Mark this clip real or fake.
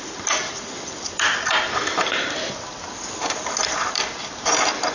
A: fake